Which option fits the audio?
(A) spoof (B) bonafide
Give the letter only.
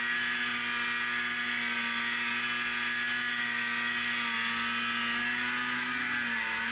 B